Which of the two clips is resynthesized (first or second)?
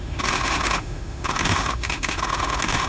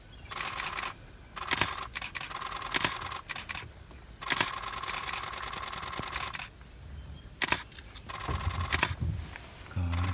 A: first